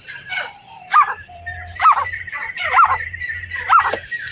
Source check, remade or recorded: remade